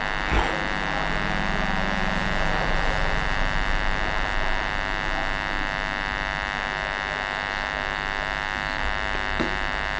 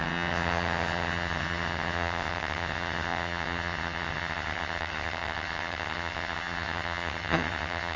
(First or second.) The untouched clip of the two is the first